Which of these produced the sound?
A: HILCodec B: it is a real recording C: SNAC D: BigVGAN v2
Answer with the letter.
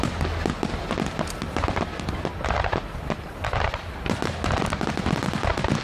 B